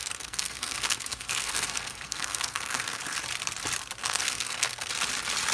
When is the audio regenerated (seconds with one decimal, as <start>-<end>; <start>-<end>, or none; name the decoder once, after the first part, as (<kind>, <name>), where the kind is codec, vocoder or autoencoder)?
0.0-3.0 (codec, SNAC); 4.0-4.9